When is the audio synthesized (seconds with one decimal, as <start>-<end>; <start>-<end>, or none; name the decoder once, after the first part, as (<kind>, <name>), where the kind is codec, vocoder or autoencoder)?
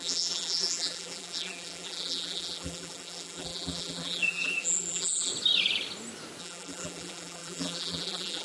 0.0-5.3 (vocoder, BigVGAN v2); 6.4-8.4